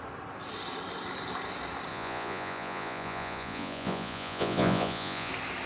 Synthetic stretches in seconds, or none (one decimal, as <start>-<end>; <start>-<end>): 1.9-5.3